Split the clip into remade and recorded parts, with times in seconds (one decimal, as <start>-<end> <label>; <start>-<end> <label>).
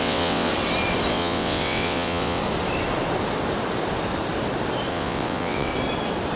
0.0-0.5 remade; 0.5-1.1 recorded; 1.1-2.4 remade; 2.4-4.9 recorded; 4.9-5.7 remade; 5.7-6.4 recorded